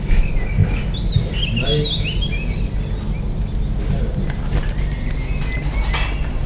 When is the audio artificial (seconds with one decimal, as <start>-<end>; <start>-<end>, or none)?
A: none